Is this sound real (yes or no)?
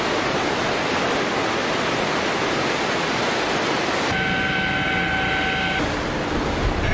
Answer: yes